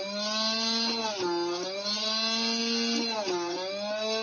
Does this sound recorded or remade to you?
recorded